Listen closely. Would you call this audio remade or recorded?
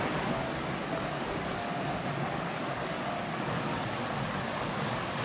remade